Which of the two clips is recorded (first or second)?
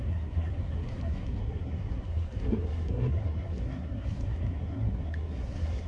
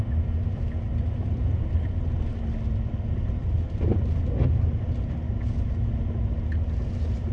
second